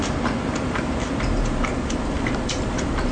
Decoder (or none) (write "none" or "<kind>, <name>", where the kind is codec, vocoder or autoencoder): vocoder, BigVGAN v2